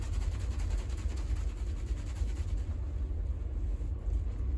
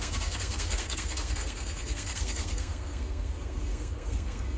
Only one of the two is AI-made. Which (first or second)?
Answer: second